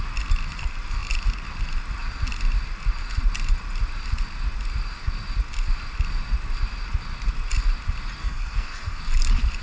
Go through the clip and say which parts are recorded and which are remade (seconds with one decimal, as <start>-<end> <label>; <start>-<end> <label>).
0.0-8.2 recorded; 8.2-9.0 remade; 9.0-9.6 recorded